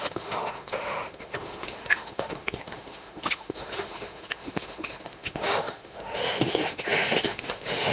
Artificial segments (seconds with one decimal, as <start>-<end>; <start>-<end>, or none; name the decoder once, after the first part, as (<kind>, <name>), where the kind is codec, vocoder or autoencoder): 0.0-7.9 (autoencoder, DAC-VAE)